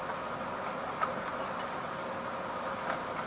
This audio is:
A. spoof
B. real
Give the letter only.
B